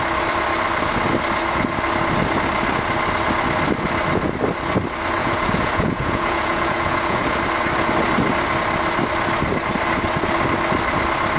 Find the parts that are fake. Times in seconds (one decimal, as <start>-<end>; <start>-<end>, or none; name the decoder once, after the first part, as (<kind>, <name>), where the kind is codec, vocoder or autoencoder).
5.2-7.4 (vocoder, Vocos)